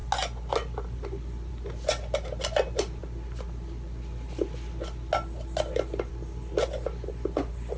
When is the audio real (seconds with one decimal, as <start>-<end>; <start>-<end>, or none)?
0.0-7.8